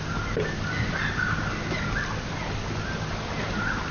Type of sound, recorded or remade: recorded